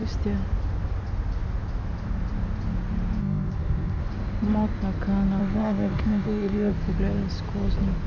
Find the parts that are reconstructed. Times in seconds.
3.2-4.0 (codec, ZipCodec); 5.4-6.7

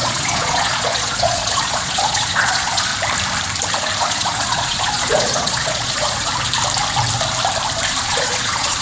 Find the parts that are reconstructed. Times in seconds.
0.0-2.9 (vocoder, Vocos); 4.0-6.3; 7.9-8.8

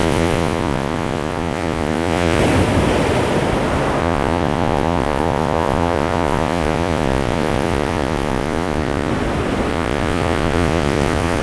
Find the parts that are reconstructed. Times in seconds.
0.0-2.4 (vocoder, Vocos); 4.0-9.1; 9.7-11.4

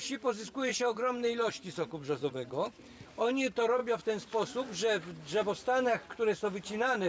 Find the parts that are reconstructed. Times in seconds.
0.7-2.8 (vocoder, WaveNeXt)